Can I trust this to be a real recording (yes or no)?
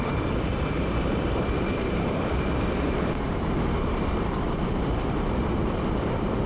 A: no